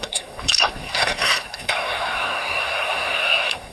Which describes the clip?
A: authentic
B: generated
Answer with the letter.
B